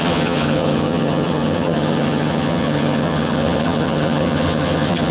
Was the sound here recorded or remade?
remade